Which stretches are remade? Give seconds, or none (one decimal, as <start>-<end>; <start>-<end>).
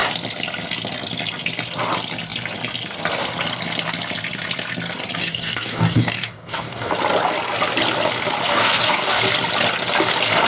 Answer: 5.2-6.9; 8.5-9.2